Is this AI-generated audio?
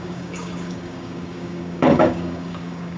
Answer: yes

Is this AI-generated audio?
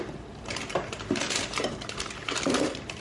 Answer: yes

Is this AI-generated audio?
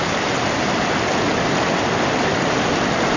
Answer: no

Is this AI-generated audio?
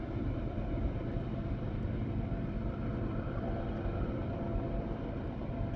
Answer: yes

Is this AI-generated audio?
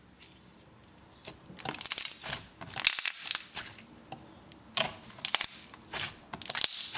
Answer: no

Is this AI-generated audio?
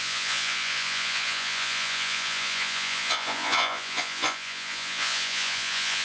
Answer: yes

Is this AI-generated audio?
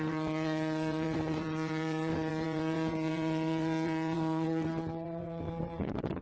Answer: yes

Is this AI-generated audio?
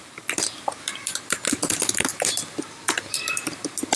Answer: yes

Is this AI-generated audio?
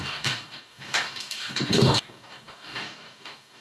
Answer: yes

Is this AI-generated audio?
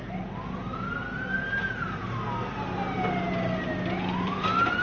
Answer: no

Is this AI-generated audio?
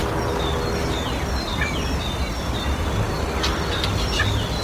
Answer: no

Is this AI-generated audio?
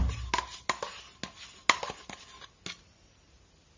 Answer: no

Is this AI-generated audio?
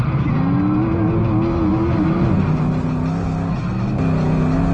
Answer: no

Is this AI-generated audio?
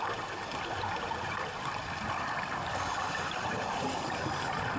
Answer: no